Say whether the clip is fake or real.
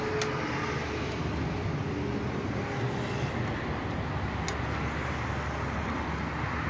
real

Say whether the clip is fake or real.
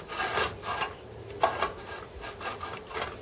real